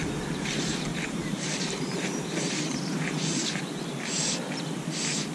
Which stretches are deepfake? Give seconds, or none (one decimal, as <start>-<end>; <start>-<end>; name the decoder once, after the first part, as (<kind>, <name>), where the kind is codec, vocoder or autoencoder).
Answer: 0.9-3.6 (vocoder, BigVGAN v2)